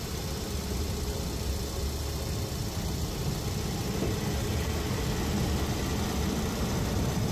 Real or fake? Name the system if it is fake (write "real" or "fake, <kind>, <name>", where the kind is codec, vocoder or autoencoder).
real